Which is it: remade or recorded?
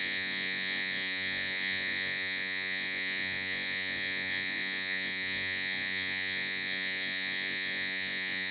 remade